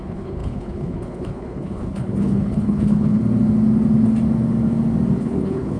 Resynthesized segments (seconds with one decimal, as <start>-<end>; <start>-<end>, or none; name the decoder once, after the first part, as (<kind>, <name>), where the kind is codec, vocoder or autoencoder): 0.0-3.2 (codec, HILCodec); 5.2-5.8